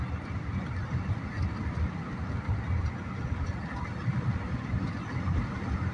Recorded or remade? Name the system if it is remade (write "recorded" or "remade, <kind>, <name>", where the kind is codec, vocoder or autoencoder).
recorded